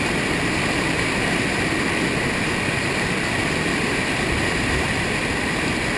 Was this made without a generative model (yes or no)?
no